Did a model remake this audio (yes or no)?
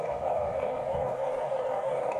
yes